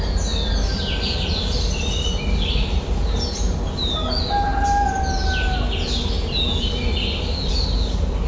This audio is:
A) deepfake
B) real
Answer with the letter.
B